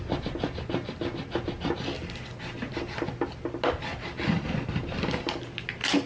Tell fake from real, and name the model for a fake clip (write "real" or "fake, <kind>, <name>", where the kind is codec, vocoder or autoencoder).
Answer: real